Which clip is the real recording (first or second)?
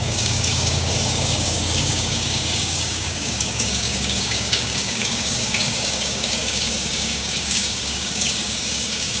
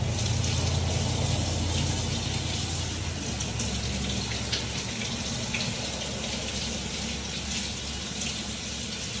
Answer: second